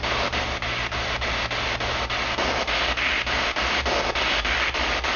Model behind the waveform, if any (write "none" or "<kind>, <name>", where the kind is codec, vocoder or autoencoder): none